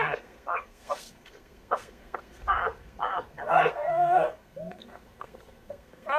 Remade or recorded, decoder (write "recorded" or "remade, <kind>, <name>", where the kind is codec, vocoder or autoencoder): remade, codec, SNAC